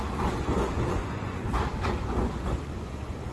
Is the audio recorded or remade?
remade